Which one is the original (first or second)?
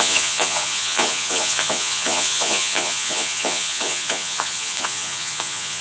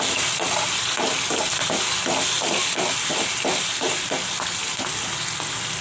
second